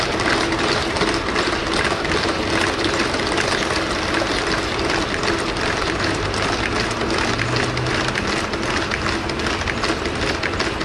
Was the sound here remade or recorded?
recorded